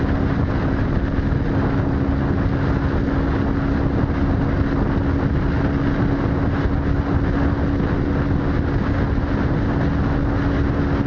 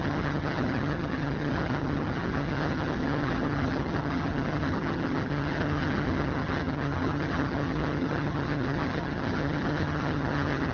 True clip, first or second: first